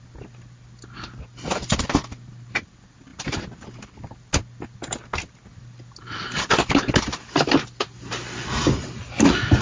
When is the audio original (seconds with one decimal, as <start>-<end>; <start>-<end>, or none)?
0.0-9.6